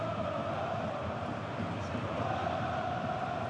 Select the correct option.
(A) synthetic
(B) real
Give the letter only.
B